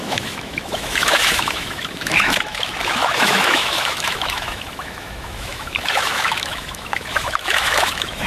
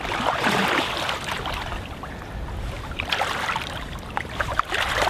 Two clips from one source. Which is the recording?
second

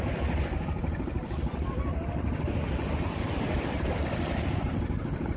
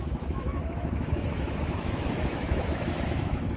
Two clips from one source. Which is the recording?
first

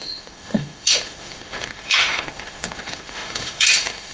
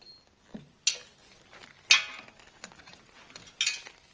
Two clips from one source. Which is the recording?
second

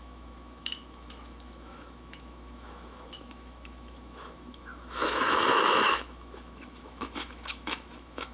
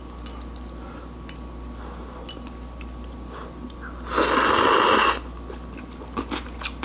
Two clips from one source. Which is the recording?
second